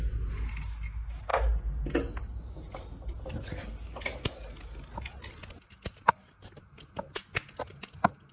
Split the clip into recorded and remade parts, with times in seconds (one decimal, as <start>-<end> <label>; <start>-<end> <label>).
0.0-8.3 recorded